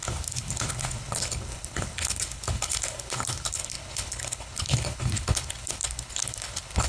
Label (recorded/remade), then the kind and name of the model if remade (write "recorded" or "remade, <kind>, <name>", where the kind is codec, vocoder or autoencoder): remade, codec, HILCodec